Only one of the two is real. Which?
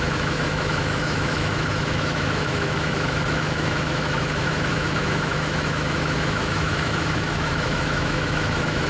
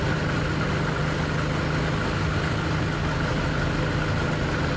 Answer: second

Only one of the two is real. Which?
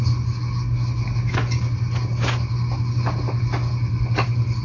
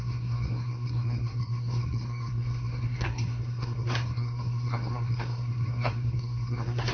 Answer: first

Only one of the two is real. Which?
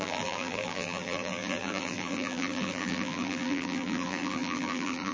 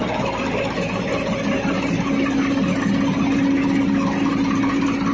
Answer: second